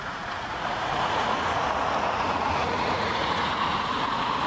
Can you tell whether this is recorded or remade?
remade